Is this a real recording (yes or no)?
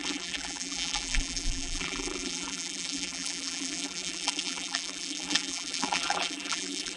no